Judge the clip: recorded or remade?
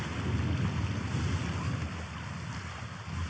recorded